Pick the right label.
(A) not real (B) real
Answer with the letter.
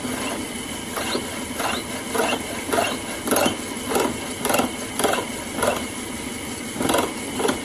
B